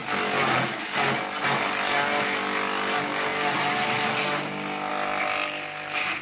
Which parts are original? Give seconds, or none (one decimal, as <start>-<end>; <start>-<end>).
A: 0.0-6.2

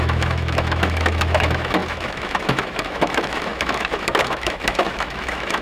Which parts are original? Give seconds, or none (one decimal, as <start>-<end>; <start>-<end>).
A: none

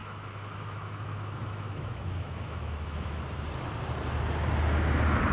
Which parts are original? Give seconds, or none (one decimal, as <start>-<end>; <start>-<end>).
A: 3.2-5.3

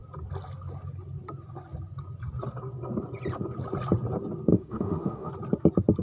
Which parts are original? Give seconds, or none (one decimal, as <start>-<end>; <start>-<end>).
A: 0.0-4.5; 5.3-6.0

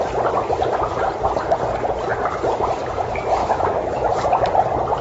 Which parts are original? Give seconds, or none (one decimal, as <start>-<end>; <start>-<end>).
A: 0.0-3.4; 4.1-5.0

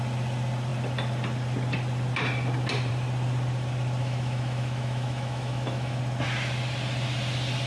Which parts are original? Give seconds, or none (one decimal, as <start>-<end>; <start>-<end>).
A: 0.0-4.0; 6.0-7.7